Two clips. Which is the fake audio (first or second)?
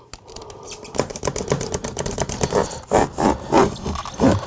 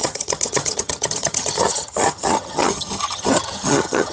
second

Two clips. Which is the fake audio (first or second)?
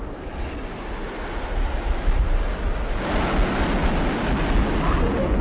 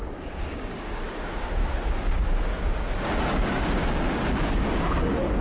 second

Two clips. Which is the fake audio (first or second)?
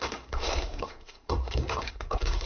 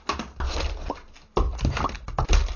first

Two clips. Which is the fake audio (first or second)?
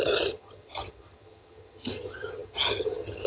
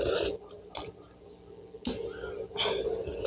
first